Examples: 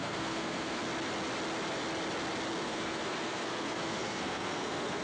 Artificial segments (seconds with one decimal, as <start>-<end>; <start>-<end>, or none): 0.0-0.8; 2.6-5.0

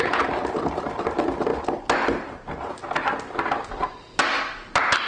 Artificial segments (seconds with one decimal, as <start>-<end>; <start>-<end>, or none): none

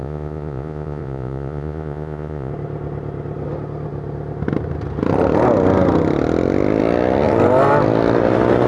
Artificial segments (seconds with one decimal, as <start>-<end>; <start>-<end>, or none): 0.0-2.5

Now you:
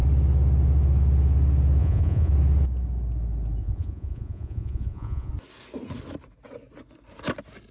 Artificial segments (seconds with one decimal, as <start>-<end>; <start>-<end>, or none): 1.8-2.3; 3.6-5.3

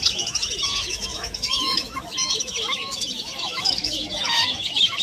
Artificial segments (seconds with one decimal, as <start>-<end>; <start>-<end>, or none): 0.0-5.0

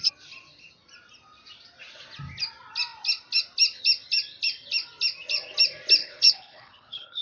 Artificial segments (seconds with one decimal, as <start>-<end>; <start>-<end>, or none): 6.0-7.2

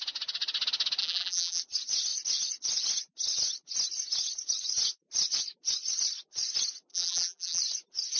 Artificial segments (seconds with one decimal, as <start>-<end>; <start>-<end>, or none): 1.0-1.6; 6.9-7.6